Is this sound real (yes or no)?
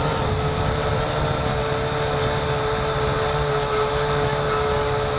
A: yes